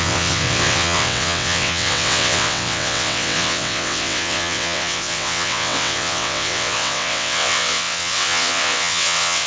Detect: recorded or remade remade